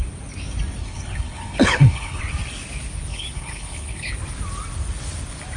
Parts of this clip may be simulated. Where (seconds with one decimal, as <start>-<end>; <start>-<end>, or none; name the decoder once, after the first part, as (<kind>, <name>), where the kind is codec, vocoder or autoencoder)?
0.8-2.2 (codec, HILCodec); 3.1-4.1